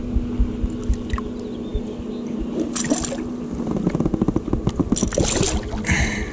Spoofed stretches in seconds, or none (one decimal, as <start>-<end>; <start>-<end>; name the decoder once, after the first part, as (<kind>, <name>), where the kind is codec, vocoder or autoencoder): none